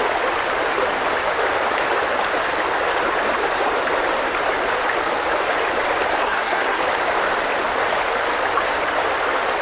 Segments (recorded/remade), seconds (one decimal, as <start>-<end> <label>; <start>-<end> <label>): 0.0-6.2 recorded; 6.2-6.8 remade; 6.8-9.6 recorded